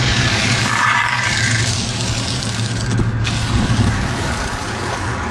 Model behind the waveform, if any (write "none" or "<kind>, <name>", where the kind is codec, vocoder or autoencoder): codec, DAC